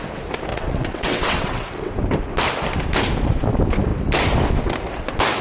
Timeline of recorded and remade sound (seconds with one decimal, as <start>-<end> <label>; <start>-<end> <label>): 0.0-0.5 recorded; 0.5-1.9 remade; 1.9-5.4 recorded